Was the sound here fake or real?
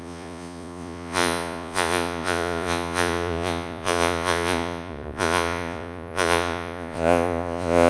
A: fake